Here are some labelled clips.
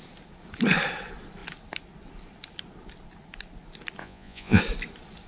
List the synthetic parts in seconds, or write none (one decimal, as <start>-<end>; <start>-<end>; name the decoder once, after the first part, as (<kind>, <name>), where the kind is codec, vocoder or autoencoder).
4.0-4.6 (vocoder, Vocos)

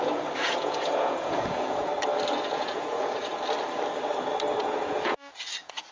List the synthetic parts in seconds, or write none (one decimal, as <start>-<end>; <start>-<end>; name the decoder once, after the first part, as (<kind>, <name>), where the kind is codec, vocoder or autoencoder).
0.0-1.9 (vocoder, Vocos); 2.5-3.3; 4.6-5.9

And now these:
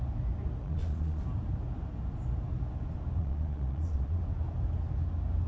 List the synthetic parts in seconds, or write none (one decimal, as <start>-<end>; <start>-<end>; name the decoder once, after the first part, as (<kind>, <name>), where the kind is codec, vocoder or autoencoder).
0.6-1.2 (vocoder, Vocos); 3.2-4.2

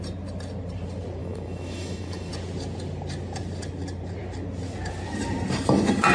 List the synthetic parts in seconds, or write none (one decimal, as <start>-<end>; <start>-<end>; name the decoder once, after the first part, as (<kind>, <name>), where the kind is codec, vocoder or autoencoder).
1.2-2.3 (autoencoder, DAC-VAE)

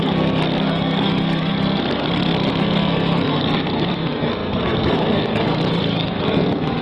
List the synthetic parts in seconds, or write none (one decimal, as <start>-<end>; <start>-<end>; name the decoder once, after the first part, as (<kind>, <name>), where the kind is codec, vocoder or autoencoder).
0.0-6.8 (codec, SNAC)

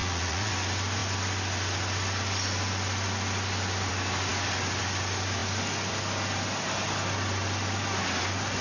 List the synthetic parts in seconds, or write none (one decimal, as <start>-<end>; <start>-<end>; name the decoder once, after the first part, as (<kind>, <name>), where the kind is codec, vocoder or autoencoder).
0.0-0.5 (vocoder, Vocos)

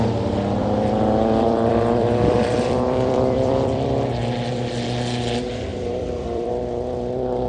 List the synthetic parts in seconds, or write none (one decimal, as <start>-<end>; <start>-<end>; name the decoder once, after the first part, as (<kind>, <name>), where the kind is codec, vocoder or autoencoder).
0.6-4.2 (vocoder, BigVGAN v2); 5.7-6.5